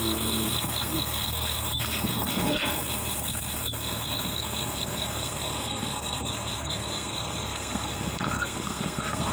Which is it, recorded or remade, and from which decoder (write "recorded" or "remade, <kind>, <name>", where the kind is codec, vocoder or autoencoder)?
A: remade, codec, SNAC